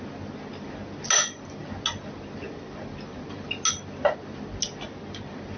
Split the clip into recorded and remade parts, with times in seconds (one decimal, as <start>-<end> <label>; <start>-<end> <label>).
0.0-5.6 recorded